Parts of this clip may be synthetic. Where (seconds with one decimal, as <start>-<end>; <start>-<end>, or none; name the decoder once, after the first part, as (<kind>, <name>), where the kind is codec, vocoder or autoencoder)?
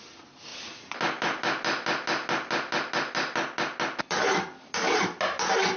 none